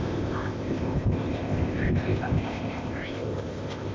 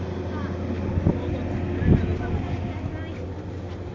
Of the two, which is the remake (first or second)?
first